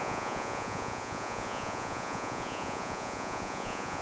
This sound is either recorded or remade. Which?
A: remade